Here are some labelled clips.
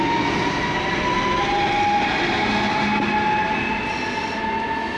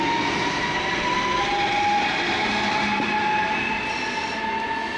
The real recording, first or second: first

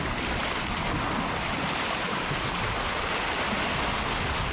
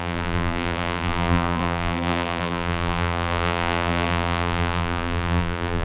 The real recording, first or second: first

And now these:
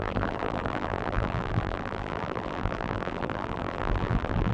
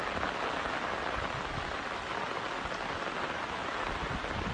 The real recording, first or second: second